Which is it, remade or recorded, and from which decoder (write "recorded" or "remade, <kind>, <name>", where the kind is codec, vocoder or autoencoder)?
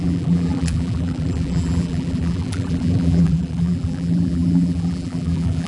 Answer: remade, vocoder, BigVGAN v2